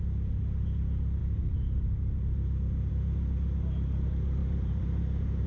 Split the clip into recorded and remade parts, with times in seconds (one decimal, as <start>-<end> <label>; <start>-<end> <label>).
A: 0.0-4.4 recorded; 4.4-5.0 remade; 5.0-5.5 recorded

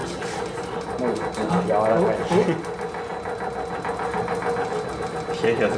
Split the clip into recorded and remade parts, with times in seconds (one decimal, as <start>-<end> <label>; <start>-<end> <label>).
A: 0.0-5.8 recorded

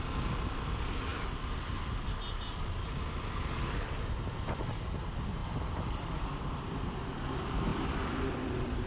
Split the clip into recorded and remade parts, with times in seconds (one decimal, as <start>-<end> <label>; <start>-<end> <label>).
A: 0.0-5.4 recorded; 5.4-6.6 remade; 6.6-7.7 recorded; 7.7-8.9 remade

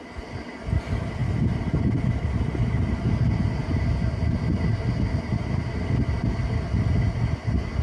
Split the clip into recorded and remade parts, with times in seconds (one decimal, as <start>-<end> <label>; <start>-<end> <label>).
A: 0.0-7.8 recorded

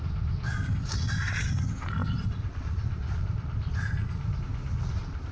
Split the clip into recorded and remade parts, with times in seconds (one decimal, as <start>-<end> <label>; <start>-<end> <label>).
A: 0.0-2.0 recorded; 2.0-4.4 remade; 4.4-5.3 recorded